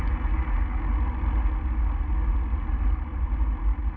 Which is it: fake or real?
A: real